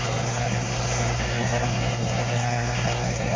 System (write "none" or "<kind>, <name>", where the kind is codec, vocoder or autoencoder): codec, SNAC